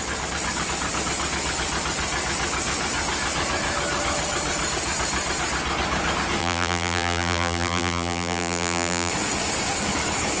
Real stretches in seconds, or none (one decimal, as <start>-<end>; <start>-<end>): 0.0-6.4; 9.1-10.4